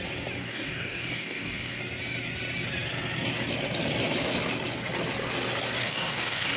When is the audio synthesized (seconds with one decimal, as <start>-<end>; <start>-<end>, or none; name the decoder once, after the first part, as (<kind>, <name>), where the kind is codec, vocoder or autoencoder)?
0.4-1.8 (codec, DAC); 5.8-6.6